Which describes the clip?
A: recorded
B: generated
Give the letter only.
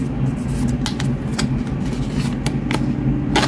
A